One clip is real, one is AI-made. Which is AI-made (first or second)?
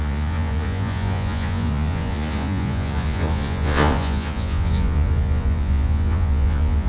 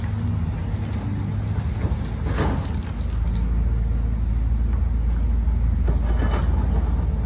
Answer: first